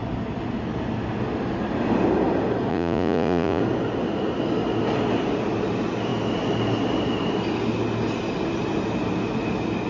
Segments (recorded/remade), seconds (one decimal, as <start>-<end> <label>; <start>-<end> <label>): 0.0-2.7 recorded; 2.7-3.6 remade; 3.6-9.9 recorded